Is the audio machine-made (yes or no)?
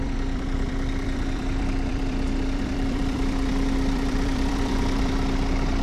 yes